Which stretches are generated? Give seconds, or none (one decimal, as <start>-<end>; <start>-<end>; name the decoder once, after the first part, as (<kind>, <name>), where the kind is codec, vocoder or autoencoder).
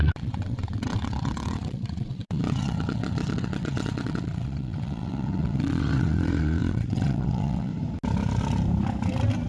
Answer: 0.0-7.7 (vocoder, WaveNeXt)